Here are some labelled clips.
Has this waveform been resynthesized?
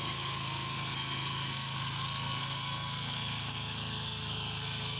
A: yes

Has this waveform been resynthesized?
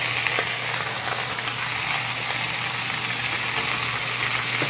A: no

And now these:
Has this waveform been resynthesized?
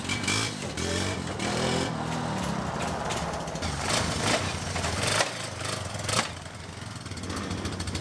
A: no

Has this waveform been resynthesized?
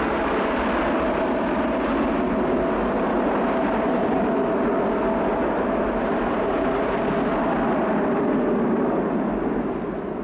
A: no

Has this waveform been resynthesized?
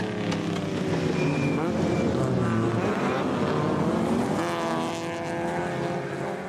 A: no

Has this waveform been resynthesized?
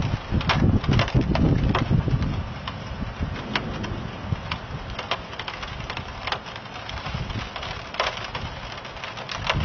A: no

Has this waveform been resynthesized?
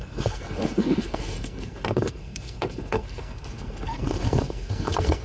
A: yes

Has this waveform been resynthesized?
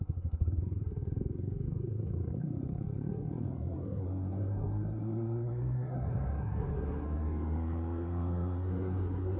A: yes